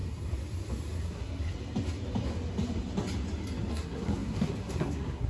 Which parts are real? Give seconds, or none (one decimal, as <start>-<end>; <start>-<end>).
0.0-1.0; 1.5-3.7